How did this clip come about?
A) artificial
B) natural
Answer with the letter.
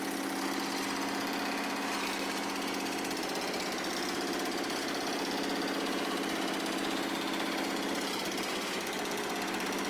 B